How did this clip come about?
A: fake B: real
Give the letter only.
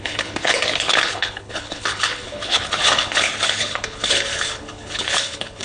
A